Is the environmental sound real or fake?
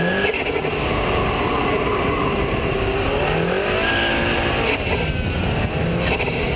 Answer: real